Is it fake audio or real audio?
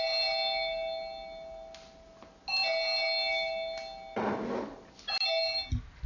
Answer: real